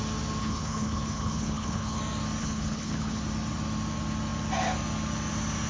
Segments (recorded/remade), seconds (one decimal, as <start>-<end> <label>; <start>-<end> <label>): 0.0-0.4 recorded; 0.4-2.0 remade; 2.0-2.4 recorded; 2.4-3.2 remade; 3.2-5.7 recorded